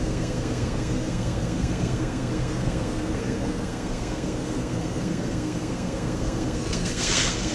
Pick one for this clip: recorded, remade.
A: remade